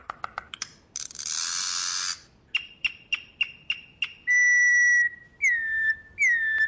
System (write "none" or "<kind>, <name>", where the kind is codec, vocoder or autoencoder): none